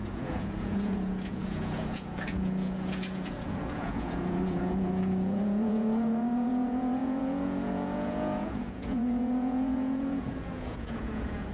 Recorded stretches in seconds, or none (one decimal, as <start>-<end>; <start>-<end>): none